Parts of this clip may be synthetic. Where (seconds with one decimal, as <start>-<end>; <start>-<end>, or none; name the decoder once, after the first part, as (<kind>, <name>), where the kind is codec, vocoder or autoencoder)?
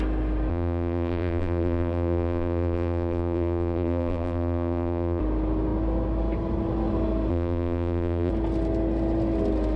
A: 0.5-5.2 (vocoder, BigVGAN v2); 7.3-8.3